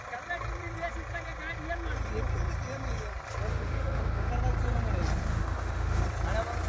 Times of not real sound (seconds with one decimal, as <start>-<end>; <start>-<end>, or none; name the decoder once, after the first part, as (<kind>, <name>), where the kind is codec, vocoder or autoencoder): 3.5-4.3 (autoencoder, DAC-VAE); 5.3-6.0